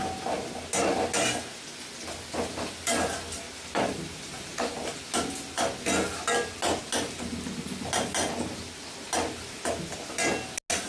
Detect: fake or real real